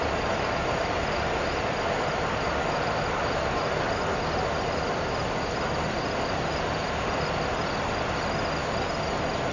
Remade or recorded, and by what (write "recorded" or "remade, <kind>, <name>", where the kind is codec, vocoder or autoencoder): recorded